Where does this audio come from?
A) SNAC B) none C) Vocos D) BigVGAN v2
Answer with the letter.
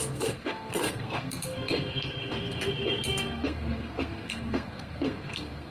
A